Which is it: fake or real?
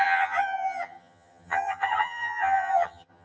fake